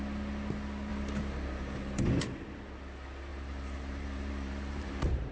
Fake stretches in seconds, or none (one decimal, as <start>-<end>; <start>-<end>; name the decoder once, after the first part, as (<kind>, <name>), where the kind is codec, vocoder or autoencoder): 0.9-2.0 (vocoder, BigVGAN v2); 3.3-5.3